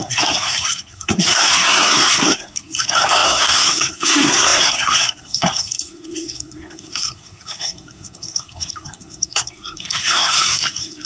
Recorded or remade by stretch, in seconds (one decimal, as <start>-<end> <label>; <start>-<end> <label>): 0.0-11.1 remade